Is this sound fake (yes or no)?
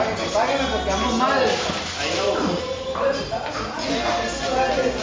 no